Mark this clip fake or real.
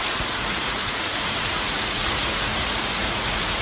fake